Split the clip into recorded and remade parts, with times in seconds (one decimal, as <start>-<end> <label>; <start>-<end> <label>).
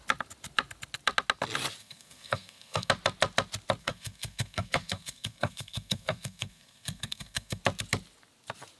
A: 0.0-1.8 recorded; 1.8-2.9 remade; 2.9-3.8 recorded; 3.8-7.6 remade; 7.6-8.8 recorded